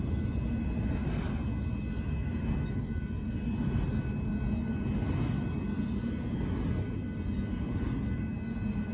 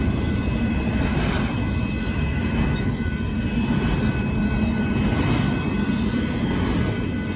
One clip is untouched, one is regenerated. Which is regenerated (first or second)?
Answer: second